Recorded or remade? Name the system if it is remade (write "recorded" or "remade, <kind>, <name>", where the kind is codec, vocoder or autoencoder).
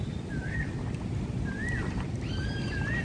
recorded